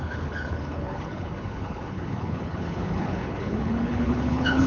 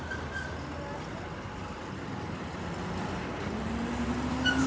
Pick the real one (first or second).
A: second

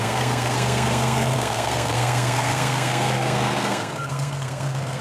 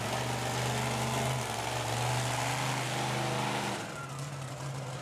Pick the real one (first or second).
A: second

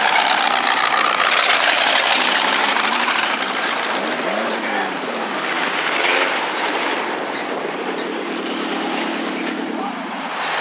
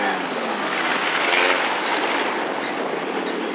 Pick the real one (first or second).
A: second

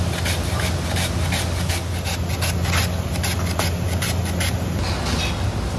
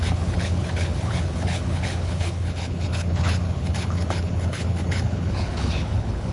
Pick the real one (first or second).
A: first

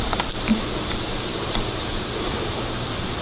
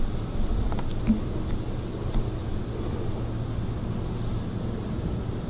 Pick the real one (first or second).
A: second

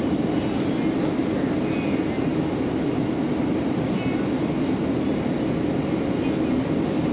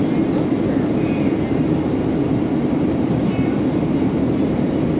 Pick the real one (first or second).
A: first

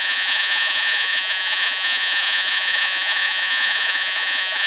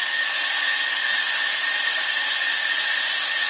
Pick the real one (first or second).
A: second